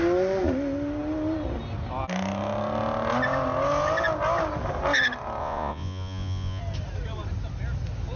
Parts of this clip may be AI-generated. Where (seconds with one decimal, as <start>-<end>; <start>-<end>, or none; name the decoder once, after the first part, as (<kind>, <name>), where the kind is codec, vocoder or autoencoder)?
5.4-6.6 (vocoder, Vocos)